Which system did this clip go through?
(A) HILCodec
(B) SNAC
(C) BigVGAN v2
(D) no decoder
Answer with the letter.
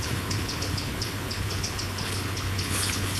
A